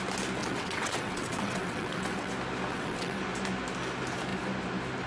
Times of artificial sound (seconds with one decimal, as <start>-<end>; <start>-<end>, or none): 0.4-2.3; 2.7-3.2